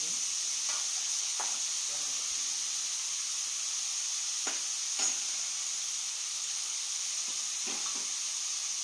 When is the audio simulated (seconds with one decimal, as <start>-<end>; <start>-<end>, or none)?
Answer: 1.0-1.6; 6.4-7.1